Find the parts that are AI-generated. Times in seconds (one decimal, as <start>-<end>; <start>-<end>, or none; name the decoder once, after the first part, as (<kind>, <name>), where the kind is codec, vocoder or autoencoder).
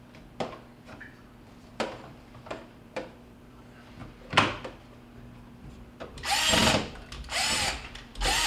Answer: 0.0-4.0 (vocoder, BigVGAN v2); 5.5-8.5